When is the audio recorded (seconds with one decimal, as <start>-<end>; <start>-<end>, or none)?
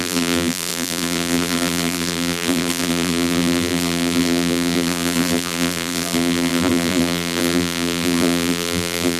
none